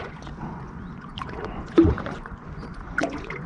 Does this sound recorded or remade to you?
remade